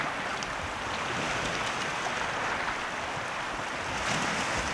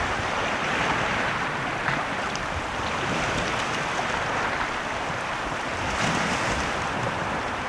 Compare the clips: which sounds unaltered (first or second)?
first